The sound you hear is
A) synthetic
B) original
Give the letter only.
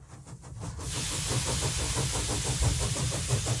B